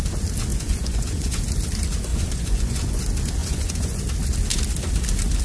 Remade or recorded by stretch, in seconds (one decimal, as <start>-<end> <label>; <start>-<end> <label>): 0.0-0.5 recorded; 0.5-1.4 remade; 1.4-2.1 recorded; 2.1-3.0 remade; 3.0-3.4 recorded; 3.4-4.0 remade; 4.0-5.4 recorded